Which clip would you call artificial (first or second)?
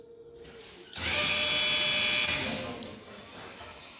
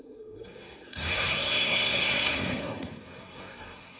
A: second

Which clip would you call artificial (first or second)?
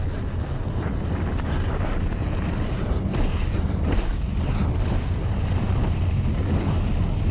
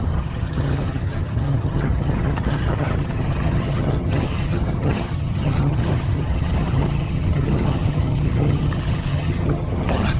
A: second